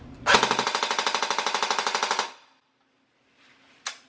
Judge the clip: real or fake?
real